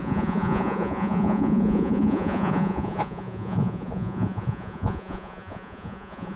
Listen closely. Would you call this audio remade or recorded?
remade